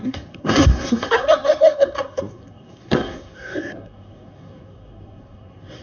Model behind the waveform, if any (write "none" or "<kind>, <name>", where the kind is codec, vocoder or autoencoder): codec, SNAC